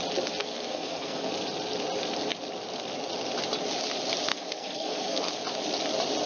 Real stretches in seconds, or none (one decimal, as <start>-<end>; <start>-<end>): 0.0-0.4; 1.3-4.3; 5.3-6.3